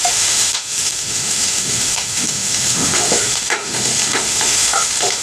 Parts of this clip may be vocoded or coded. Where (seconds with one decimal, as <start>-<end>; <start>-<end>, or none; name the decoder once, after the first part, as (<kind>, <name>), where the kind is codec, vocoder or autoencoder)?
0.0-5.2 (autoencoder, DAC-VAE)